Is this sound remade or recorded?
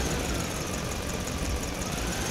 remade